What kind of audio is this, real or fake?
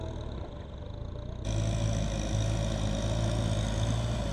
real